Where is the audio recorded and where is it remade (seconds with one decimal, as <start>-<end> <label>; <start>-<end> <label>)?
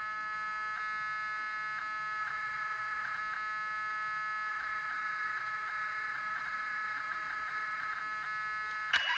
0.0-2.2 recorded; 2.2-3.2 remade; 3.2-4.5 recorded; 4.5-7.9 remade; 7.9-9.2 recorded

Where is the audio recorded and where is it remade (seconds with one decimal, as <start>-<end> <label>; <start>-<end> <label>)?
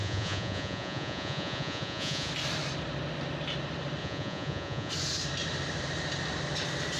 0.0-2.3 remade; 2.3-4.0 recorded; 4.0-4.9 remade; 4.9-7.0 recorded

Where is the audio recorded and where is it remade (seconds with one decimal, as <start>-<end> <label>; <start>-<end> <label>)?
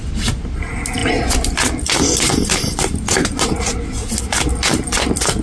0.0-5.4 recorded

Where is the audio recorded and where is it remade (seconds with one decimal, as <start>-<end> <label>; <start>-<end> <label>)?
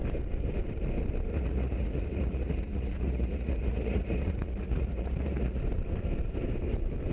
0.0-1.3 recorded; 1.3-5.6 remade; 5.6-7.1 recorded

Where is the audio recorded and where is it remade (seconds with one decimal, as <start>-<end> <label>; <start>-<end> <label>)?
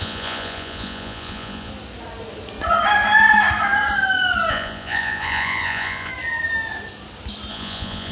0.0-1.7 remade; 1.7-4.5 recorded; 4.5-6.1 remade; 6.1-7.5 recorded; 7.5-8.1 remade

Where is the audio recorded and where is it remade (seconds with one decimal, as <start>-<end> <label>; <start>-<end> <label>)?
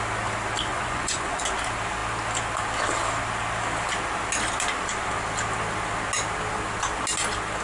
0.0-0.7 recorded; 0.7-1.4 remade; 1.4-7.6 recorded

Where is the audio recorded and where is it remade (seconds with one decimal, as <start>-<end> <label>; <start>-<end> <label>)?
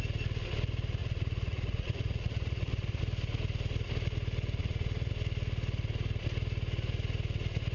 0.0-1.0 recorded; 1.0-3.0 remade; 3.0-4.6 recorded; 4.6-5.1 remade; 5.1-7.7 recorded